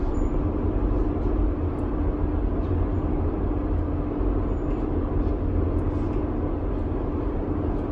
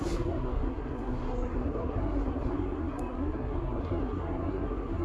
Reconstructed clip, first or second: second